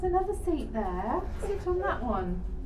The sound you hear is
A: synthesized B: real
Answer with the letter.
B